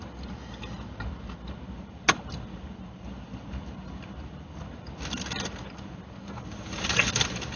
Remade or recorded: recorded